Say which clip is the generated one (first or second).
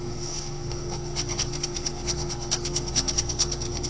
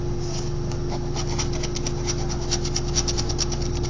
first